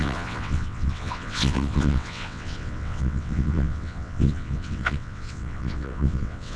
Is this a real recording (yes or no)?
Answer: no